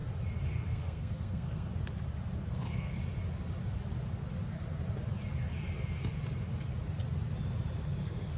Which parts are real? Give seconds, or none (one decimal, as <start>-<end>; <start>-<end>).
0.0-0.5; 1.7-2.4; 3.0-8.0